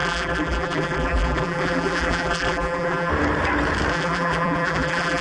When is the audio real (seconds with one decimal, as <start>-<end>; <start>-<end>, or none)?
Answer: 3.1-3.9